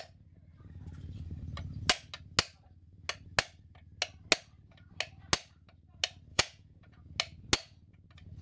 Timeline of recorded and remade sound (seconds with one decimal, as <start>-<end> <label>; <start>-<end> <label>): 0.0-6.3 recorded; 6.3-7.0 remade; 7.0-8.4 recorded